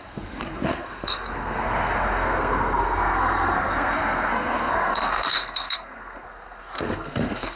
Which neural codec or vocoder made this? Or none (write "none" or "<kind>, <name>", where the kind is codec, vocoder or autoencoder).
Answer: codec, SNAC